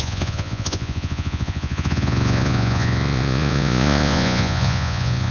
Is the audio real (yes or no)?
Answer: no